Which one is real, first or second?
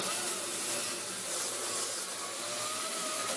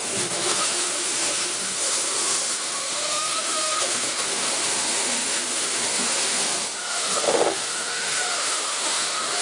first